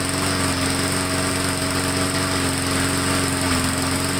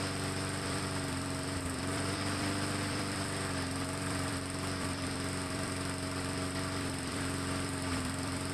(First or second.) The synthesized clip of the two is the second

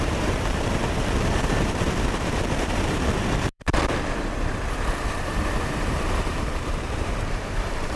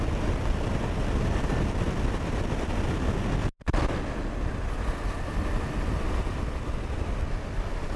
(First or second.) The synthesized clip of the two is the first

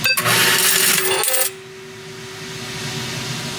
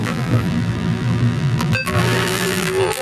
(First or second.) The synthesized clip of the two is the second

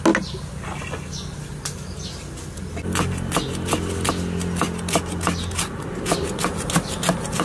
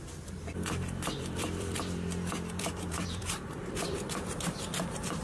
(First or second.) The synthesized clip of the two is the second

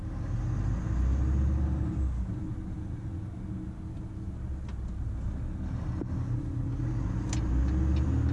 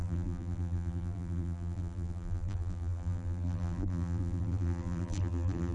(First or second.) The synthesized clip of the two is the second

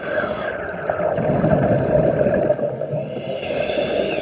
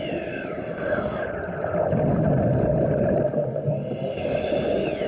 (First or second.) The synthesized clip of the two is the first